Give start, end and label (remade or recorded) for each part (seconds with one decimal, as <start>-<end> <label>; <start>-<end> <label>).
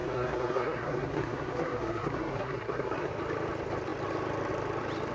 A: 0.0-3.1 remade; 3.1-5.1 recorded